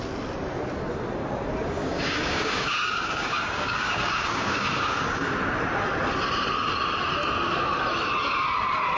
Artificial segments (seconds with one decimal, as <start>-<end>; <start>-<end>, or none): 1.8-5.3